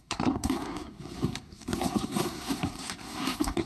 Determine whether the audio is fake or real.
fake